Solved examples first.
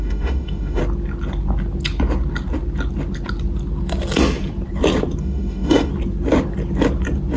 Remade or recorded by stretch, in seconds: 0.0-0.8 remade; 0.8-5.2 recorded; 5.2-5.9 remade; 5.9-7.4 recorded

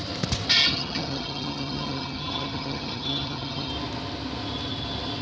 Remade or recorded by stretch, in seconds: 0.0-0.6 recorded; 0.6-3.7 remade; 3.7-5.2 recorded

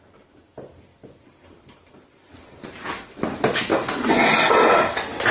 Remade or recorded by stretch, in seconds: 0.0-0.9 recorded; 0.9-4.1 remade; 4.1-5.3 recorded

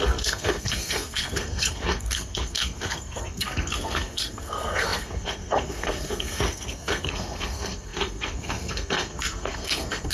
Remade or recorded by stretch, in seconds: 0.0-10.1 remade

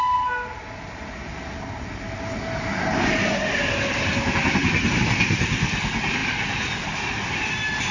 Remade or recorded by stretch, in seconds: 0.0-7.9 recorded

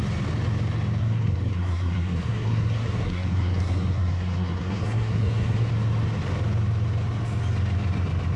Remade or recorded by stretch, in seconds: 0.0-1.0 recorded; 1.0-5.7 remade; 5.7-8.4 recorded

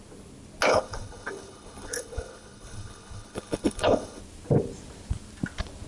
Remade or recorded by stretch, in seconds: 0.0-0.7 recorded; 0.7-4.2 remade; 4.2-5.9 recorded